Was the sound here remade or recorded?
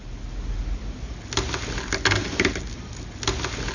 recorded